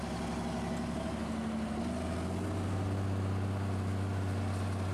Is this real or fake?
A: real